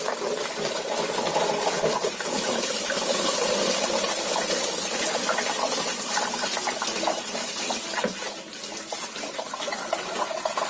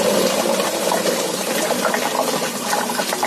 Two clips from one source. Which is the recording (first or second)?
second